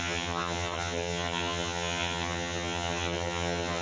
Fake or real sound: fake